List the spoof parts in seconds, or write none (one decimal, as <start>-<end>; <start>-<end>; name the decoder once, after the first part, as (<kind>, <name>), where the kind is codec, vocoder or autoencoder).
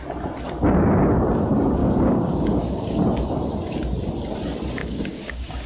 1.8-3.0 (codec, DAC); 4.8-5.7